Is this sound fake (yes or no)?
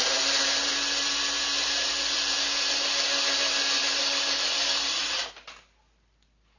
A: no